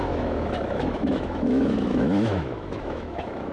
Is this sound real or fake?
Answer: fake